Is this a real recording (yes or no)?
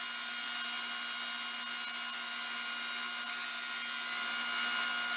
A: yes